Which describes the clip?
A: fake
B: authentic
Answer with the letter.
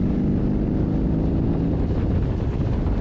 B